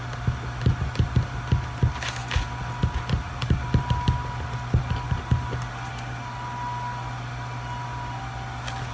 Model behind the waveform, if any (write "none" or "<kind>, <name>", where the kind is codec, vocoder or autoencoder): none